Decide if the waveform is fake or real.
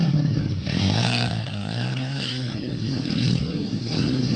fake